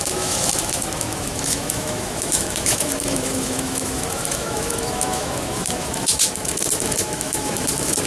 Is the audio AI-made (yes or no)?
yes